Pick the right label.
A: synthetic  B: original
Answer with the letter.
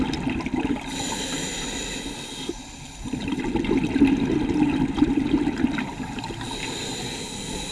B